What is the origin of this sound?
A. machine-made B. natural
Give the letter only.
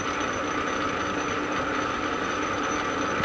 B